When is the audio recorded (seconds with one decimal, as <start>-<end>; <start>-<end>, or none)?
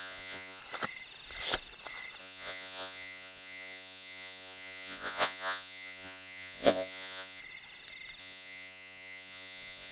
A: 0.6-2.2; 7.4-8.2